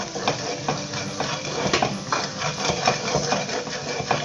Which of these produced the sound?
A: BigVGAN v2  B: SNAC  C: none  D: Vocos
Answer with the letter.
C